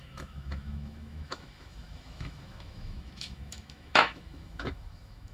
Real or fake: fake